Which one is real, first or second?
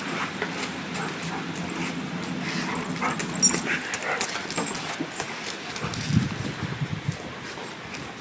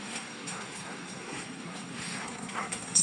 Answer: first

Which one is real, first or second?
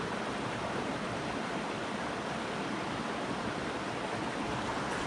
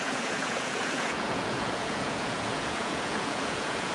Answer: first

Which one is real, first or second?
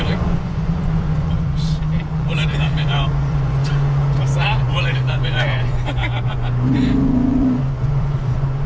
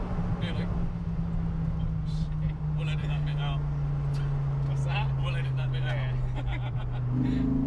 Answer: second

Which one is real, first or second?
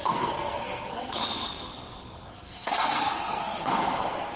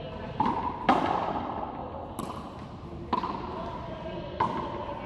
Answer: second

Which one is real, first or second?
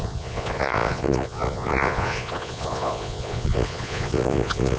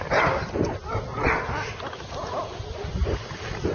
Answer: second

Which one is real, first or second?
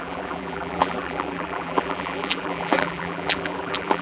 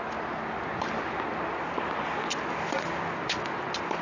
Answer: second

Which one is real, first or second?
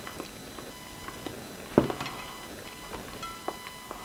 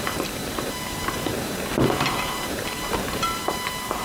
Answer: first